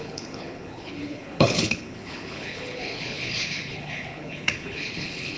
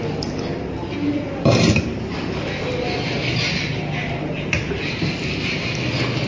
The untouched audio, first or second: second